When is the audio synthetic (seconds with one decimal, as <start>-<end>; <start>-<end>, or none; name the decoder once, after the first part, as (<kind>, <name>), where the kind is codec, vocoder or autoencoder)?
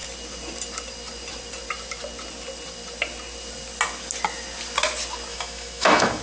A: 5.3-6.2 (autoencoder, DAC-VAE)